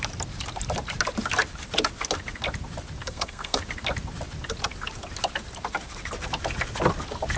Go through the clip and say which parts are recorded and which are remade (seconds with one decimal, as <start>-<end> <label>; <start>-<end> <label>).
0.0-3.0 recorded; 3.0-3.6 remade; 3.6-7.4 recorded